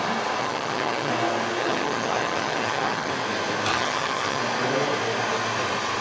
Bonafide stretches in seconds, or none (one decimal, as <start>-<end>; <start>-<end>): 0.0-0.4; 1.1-1.6; 3.1-3.7; 4.4-6.0

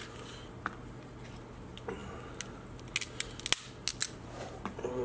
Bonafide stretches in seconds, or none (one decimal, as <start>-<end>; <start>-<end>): 0.0-5.0

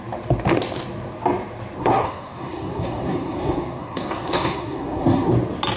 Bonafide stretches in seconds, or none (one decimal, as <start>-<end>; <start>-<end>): 0.0-1.8; 5.3-5.8

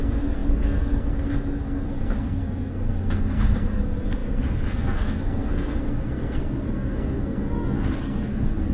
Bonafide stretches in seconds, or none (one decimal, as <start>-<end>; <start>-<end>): none

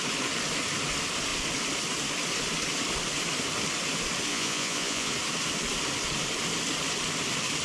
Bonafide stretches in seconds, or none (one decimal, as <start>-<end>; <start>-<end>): 0.0-4.3; 5.1-7.6